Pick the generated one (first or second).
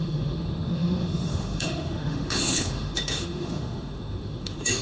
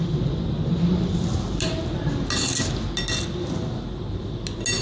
first